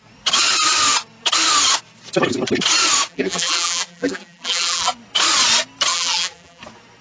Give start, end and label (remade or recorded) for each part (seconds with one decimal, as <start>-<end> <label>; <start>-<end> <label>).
0.0-3.1 recorded; 3.1-4.9 remade; 4.9-5.9 recorded; 5.9-6.6 remade; 6.6-7.0 recorded